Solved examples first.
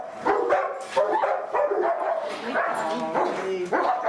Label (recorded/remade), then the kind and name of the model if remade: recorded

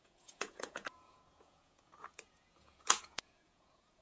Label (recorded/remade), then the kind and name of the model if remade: remade, vocoder, Vocos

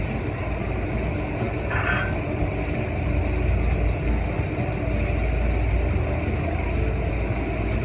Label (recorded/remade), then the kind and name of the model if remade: recorded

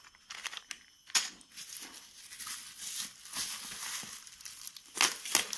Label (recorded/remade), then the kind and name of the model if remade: recorded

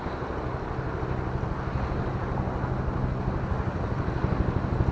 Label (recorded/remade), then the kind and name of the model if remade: recorded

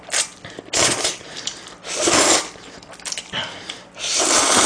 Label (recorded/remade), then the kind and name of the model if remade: recorded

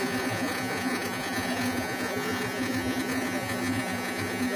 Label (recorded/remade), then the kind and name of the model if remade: remade, vocoder, Vocos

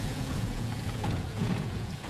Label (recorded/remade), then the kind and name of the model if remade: remade, vocoder, Vocos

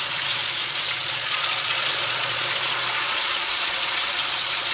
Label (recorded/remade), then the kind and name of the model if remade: remade, vocoder, Vocos